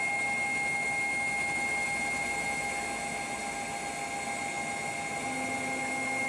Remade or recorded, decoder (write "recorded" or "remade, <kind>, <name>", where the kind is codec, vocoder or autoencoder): recorded